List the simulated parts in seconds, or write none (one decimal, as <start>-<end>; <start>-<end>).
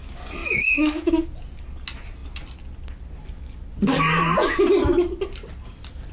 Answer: 0.4-1.1